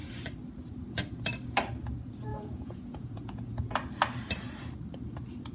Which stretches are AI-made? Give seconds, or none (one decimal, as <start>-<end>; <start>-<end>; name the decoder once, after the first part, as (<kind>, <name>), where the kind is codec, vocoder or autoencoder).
2.3-3.7 (vocoder, Vocos)